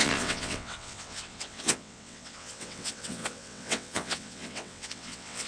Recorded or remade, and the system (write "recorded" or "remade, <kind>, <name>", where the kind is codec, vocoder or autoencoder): remade, vocoder, WaveNeXt